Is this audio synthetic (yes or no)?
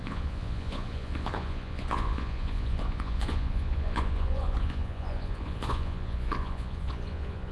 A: yes